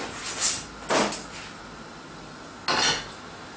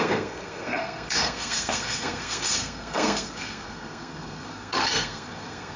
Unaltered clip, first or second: first